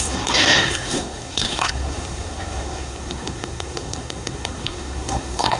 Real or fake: fake